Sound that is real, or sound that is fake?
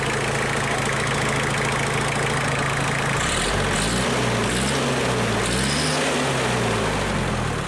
real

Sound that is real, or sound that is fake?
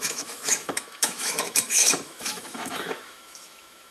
fake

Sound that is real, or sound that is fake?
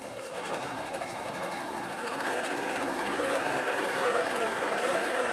fake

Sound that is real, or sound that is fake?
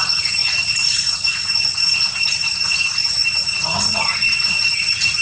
fake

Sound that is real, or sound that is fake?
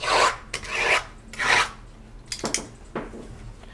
real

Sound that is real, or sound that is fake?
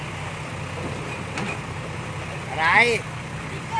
real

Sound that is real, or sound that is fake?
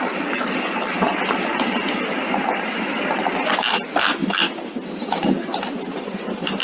real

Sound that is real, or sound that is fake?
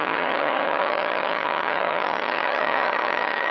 fake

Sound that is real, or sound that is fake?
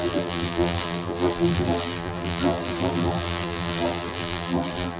fake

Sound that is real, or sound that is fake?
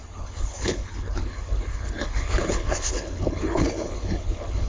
fake